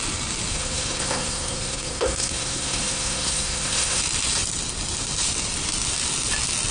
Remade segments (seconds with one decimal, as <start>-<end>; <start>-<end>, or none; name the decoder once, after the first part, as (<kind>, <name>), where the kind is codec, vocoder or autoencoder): 0.5-4.0 (codec, SNAC)